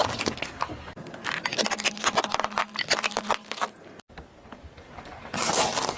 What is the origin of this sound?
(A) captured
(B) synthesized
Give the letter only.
A